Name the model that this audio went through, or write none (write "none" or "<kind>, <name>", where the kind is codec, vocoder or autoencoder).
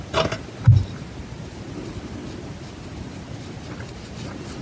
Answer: none